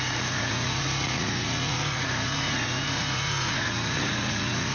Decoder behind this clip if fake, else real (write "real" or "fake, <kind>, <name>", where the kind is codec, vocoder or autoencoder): fake, vocoder, Vocos